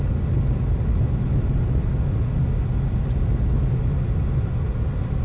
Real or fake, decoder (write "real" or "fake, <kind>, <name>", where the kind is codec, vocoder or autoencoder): real